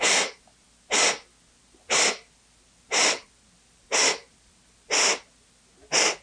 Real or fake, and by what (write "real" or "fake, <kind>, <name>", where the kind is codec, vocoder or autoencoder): real